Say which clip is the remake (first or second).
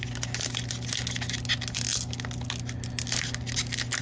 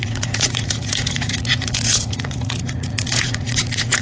second